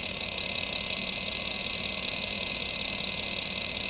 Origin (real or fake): real